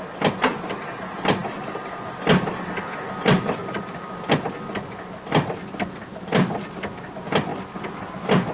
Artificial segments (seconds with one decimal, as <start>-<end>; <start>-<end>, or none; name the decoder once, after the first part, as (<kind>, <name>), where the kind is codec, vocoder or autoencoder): 1.4-2.7 (vocoder, BigVGAN v2); 3.6-4.3; 7.5-8.5

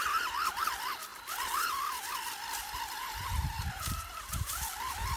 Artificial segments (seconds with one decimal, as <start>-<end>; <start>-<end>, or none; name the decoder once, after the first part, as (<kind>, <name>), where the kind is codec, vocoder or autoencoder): 3.0-4.6 (vocoder, BigVGAN v2)